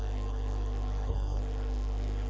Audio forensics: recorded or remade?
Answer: remade